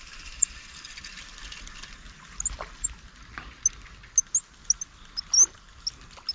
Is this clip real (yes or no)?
yes